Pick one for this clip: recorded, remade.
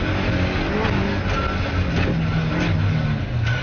recorded